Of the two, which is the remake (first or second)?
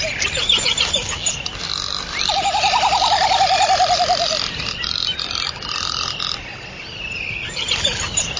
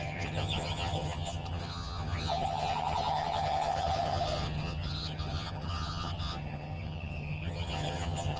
second